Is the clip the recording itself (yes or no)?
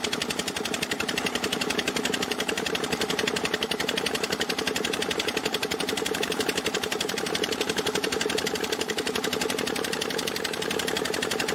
no